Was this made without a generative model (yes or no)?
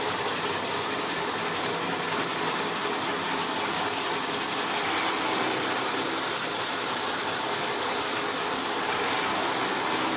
yes